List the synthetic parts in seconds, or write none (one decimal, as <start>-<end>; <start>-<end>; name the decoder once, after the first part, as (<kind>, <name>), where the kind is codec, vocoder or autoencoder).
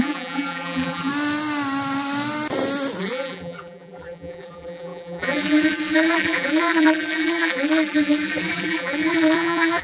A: 0.0-1.1 (vocoder, BigVGAN v2); 3.0-9.8